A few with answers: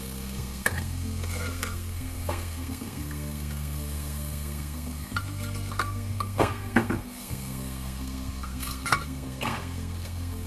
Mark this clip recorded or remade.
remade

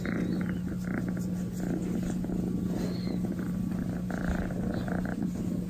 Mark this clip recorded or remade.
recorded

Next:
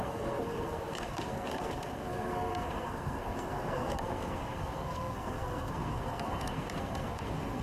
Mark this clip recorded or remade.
remade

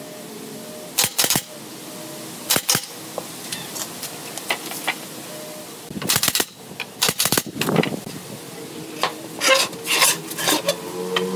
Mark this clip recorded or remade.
recorded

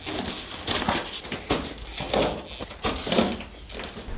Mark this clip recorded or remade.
recorded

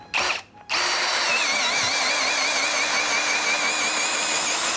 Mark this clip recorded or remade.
recorded